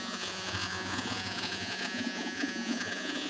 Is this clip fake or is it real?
fake